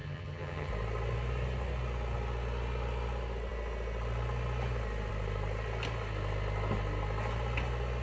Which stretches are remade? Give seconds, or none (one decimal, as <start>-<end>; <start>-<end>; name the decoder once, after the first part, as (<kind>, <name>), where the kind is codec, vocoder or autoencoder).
0.0-0.7 (vocoder, HiFi-GAN)